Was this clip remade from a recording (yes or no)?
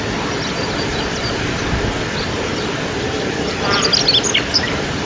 no